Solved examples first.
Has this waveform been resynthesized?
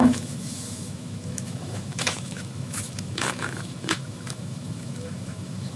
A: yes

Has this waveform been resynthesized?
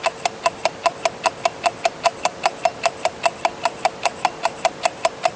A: no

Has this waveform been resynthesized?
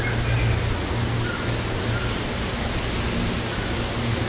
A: no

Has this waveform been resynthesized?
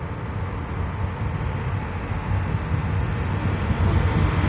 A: no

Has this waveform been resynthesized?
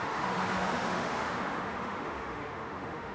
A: yes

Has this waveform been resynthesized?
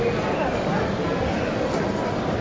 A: no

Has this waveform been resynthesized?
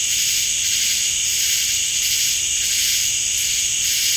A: no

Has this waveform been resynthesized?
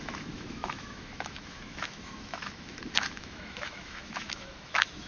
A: yes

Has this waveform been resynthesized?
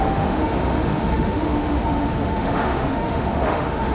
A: yes